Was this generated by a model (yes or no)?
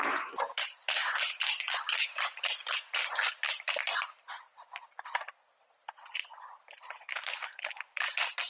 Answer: no